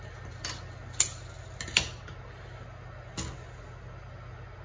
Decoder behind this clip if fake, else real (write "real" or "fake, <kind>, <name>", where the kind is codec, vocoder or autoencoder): real